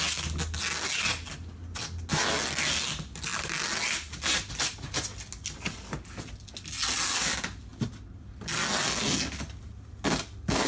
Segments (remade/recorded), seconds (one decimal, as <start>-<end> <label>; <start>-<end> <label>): 0.0-10.7 recorded